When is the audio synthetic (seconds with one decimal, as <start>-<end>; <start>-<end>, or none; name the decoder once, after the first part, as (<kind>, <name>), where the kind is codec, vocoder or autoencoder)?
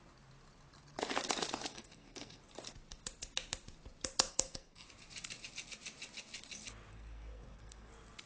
1.7-2.4 (codec, SNAC); 4.3-4.9; 6.9-7.9